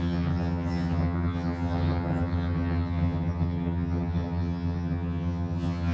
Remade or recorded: remade